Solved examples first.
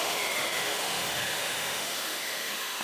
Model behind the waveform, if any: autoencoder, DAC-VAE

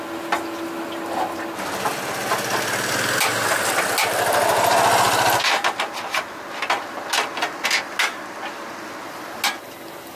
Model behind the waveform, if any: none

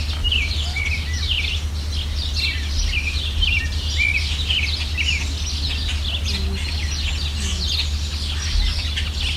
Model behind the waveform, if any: none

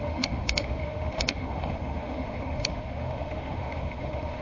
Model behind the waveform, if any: autoencoder, DAC-VAE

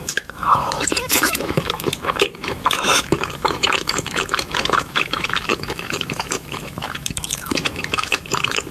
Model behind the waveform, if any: autoencoder, DAC-VAE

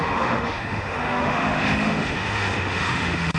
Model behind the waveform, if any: autoencoder, DAC-VAE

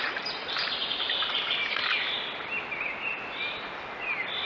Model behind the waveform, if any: none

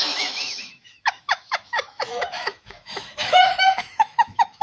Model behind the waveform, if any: autoencoder, DAC-VAE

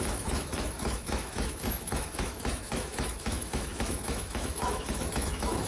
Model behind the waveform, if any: autoencoder, DAC-VAE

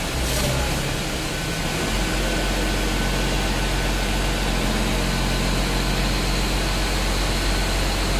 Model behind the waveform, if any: none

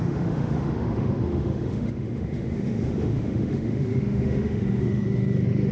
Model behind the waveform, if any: autoencoder, DAC-VAE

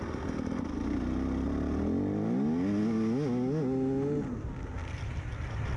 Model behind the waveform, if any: none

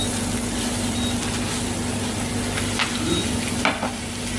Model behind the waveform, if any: none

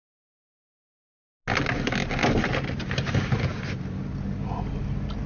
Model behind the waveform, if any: none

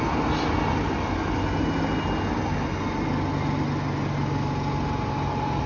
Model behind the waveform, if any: none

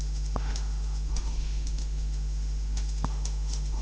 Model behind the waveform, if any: autoencoder, DAC-VAE